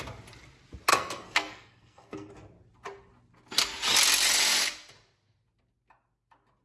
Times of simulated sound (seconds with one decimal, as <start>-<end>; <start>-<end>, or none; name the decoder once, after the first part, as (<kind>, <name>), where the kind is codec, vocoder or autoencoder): 0.9-2.3 (codec, SNAC)